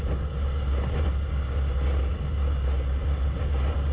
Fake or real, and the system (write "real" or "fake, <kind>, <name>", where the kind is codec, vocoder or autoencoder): real